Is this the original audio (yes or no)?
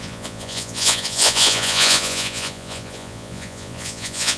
no